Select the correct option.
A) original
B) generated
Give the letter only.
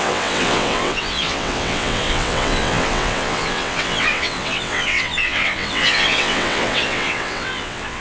B